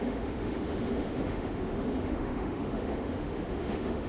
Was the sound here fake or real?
fake